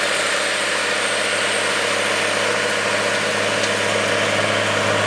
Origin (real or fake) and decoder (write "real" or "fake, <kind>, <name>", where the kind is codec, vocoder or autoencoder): real